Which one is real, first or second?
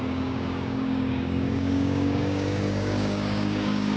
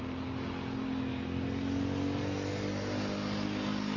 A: second